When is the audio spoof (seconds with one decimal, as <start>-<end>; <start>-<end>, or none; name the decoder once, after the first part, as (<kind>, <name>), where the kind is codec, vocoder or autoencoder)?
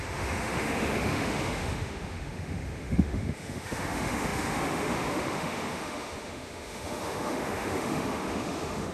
0.0-8.9 (autoencoder, DAC-VAE)